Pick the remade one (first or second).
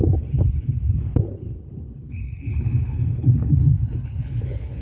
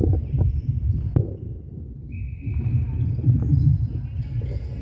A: first